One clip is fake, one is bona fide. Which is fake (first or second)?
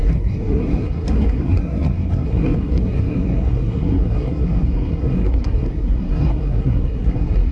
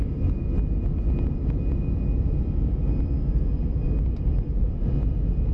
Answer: first